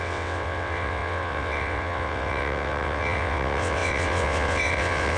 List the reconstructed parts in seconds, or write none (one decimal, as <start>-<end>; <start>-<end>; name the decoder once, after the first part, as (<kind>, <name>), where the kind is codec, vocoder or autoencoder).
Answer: 0.0-5.2 (vocoder, WaveNeXt)